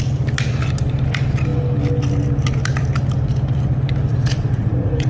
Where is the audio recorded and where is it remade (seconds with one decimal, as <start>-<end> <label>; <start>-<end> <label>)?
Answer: 0.0-4.1 recorded; 4.1-5.1 remade